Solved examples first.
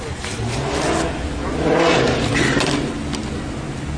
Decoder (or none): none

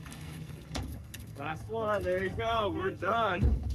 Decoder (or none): codec, SNAC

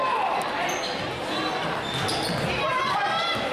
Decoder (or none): none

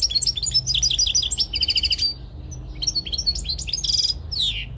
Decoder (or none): none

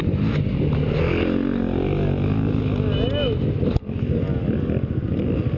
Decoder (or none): none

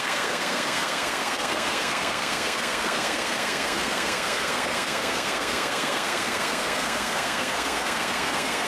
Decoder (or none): codec, SNAC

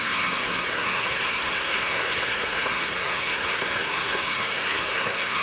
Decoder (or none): codec, SNAC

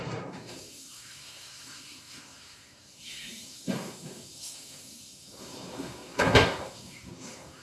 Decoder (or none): codec, SNAC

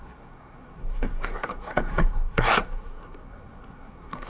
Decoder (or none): codec, SNAC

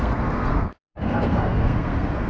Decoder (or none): codec, SNAC